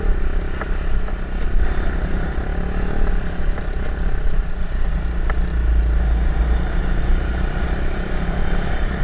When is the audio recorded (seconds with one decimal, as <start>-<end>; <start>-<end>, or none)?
0.0-9.0